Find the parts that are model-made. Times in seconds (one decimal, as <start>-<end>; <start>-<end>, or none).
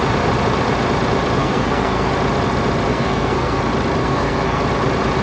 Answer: 1.4-2.1; 2.9-3.6; 4.0-4.6